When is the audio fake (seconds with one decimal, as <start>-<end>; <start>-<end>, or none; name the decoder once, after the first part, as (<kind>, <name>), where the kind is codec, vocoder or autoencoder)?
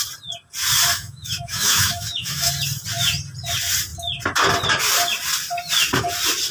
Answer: 0.9-2.5 (autoencoder, DAC-VAE)